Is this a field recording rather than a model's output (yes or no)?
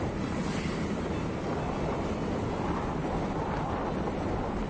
yes